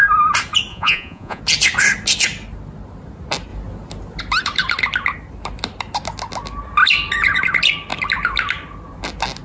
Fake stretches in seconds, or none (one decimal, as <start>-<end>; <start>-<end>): 0.7-1.4